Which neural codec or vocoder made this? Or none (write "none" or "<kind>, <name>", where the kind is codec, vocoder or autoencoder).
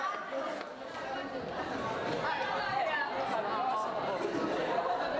none